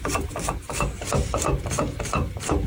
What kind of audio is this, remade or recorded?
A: recorded